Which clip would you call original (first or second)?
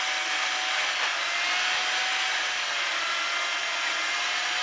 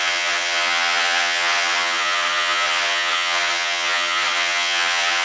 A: first